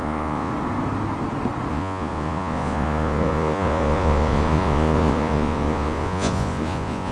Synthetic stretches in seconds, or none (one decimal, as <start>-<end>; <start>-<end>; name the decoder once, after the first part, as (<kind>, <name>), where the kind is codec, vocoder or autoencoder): 0.0-0.5 (vocoder, Vocos); 1.7-7.1